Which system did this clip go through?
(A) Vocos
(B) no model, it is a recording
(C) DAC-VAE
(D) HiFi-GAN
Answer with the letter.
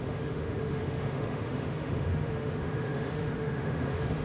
C